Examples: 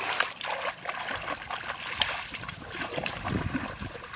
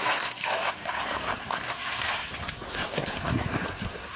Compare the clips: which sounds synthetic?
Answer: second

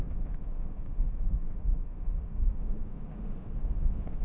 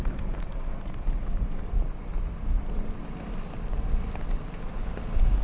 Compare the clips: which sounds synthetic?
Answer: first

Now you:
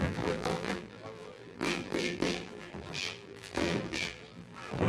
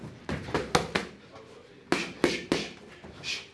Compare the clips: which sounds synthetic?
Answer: first